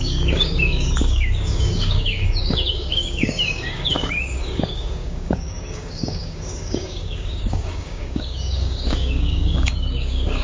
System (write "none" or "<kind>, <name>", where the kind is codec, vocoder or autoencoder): codec, DAC